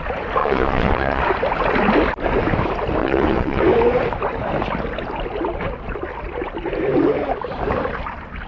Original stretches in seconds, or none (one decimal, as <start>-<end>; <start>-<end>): 0.0-0.4; 1.2-3.0; 3.6-8.5